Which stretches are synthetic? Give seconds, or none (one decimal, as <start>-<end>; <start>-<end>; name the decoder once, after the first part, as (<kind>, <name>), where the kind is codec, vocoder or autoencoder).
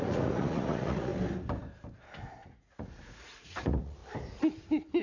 0.0-1.1 (vocoder, Vocos); 2.3-4.0